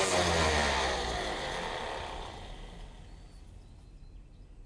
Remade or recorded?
recorded